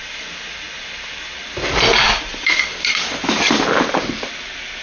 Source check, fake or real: real